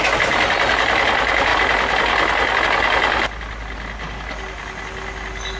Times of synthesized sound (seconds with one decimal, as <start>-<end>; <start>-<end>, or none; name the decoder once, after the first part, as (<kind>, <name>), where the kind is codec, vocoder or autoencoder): none